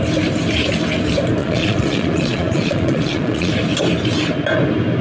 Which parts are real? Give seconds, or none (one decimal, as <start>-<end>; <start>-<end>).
0.0-1.4; 3.5-5.0